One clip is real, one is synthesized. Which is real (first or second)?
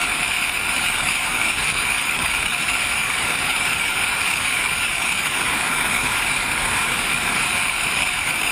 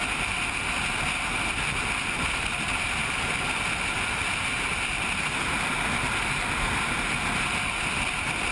second